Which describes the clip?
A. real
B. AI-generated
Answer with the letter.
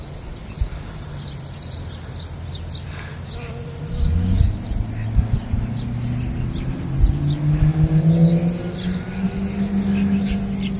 A